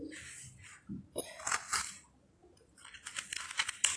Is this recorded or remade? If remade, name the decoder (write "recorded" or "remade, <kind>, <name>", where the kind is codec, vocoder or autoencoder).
recorded